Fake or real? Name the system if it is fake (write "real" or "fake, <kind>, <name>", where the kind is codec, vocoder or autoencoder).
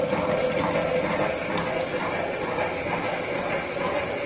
real